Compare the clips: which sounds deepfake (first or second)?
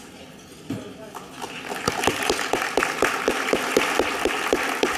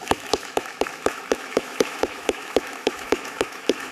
second